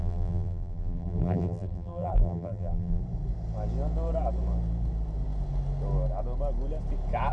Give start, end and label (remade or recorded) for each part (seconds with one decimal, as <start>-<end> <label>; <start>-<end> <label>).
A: 0.0-3.0 remade; 3.0-7.3 recorded